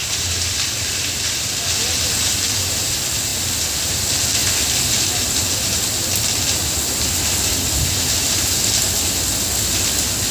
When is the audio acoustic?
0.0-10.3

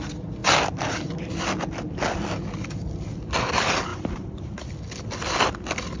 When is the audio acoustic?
0.0-3.9; 4.6-6.0

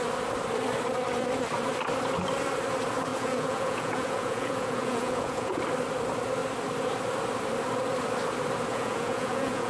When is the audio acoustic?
0.0-3.1; 5.6-8.7

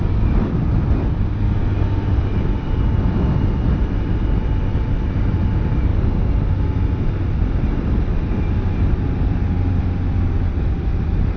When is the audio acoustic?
0.0-11.4